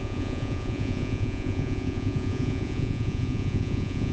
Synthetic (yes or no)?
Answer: yes